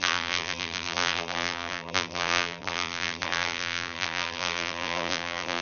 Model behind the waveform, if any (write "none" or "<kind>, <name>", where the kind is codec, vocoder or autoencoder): vocoder, BigVGAN v2